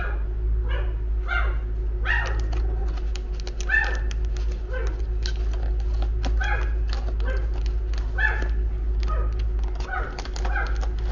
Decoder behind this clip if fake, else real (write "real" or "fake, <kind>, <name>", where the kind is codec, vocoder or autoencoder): real